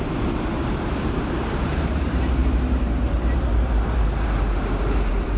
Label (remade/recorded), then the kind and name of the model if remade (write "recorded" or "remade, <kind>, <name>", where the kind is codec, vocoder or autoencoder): remade, vocoder, BigVGAN v2